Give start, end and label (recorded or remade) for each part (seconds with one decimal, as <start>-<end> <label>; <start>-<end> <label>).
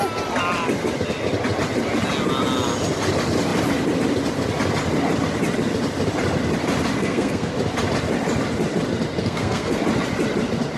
0.0-7.0 recorded; 7.0-7.5 remade; 7.5-9.2 recorded; 9.2-9.8 remade; 9.8-10.8 recorded